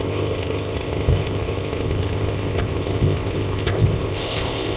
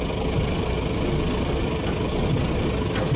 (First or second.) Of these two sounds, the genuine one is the second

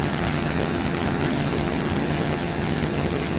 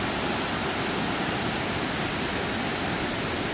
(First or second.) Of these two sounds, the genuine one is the second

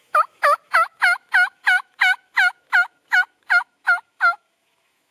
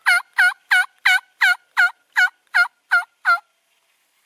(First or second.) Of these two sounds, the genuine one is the second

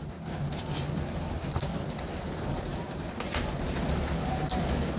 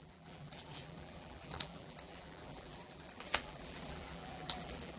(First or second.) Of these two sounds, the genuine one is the first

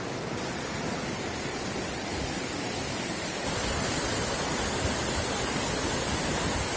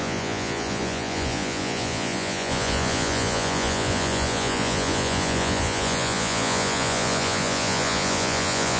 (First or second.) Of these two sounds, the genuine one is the first